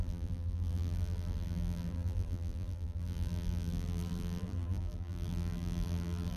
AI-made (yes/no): yes